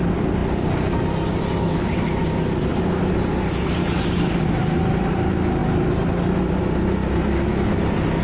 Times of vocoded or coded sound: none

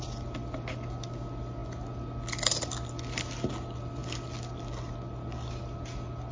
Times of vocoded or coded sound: none

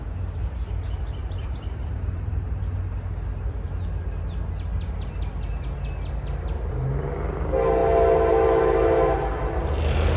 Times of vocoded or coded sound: 1.2-2.6

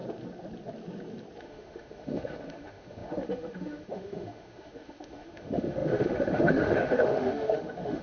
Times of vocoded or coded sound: 1.4-8.0